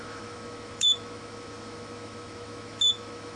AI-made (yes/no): yes